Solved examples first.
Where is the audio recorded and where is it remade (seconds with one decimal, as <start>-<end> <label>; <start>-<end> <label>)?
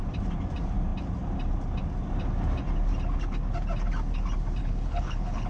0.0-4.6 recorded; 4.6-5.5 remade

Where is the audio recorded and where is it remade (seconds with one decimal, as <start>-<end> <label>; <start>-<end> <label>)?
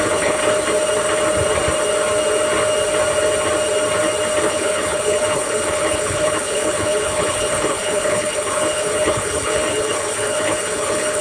0.0-0.4 remade; 0.4-4.4 recorded; 4.4-11.2 remade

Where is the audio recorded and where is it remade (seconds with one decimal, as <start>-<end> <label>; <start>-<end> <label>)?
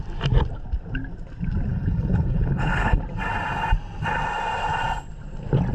0.0-1.7 recorded; 1.7-3.0 remade; 3.0-5.7 recorded